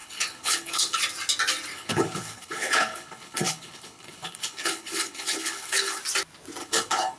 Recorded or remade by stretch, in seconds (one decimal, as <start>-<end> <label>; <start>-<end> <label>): 0.0-1.0 remade; 1.0-1.7 recorded; 1.7-6.0 remade; 6.0-6.6 recorded; 6.6-7.2 remade